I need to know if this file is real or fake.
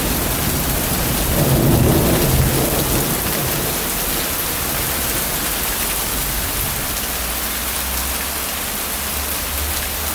real